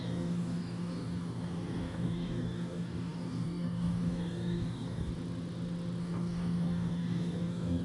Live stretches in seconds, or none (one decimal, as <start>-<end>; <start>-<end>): 5.1-6.0